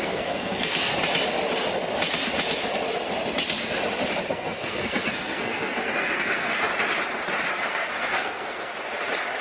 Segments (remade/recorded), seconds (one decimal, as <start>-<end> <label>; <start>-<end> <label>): 0.0-0.9 remade; 0.9-4.3 recorded; 4.3-6.7 remade; 6.7-7.5 recorded; 7.5-8.7 remade; 8.7-9.4 recorded